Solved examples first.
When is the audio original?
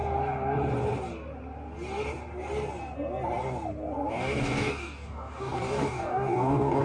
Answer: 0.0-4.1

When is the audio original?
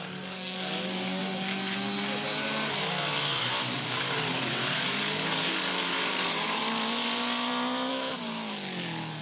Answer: 1.2-3.2; 6.6-7.9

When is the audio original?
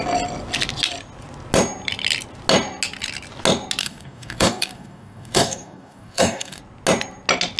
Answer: 0.0-3.8; 6.6-7.6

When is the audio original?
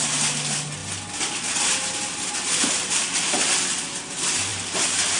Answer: 0.0-5.2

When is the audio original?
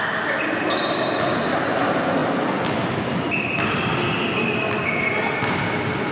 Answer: 0.0-6.1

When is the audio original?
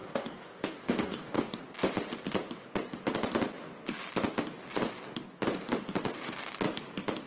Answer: 1.6-7.3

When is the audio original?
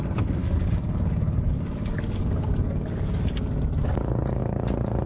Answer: 0.0-0.4; 3.5-5.1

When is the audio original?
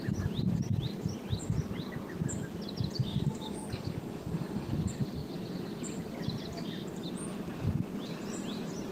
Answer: 0.0-3.0; 4.7-8.9